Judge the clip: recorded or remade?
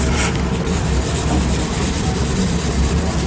recorded